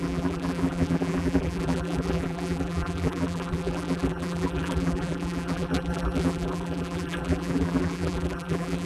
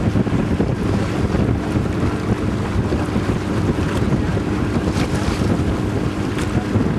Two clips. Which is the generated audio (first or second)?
first